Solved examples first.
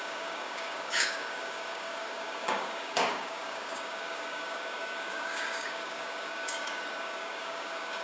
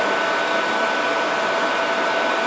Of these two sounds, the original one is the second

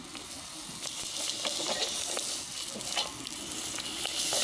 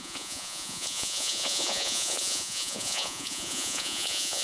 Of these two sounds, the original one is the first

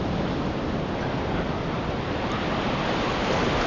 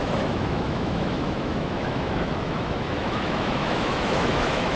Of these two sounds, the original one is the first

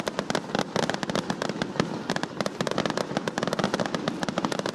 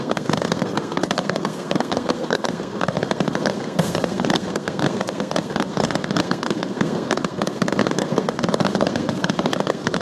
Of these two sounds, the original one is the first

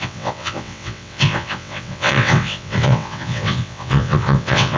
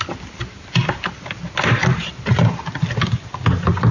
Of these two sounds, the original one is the second